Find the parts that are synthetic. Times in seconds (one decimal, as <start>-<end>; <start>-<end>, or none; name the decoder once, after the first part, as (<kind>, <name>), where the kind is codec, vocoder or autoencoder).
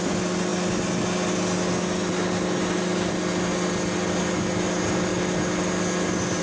none